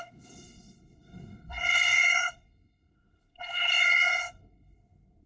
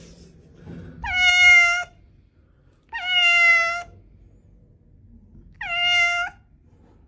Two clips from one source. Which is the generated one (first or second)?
first